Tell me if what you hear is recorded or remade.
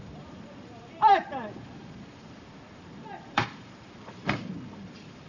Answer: remade